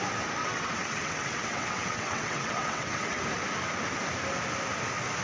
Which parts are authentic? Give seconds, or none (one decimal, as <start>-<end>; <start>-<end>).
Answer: 0.0-0.4; 3.2-5.2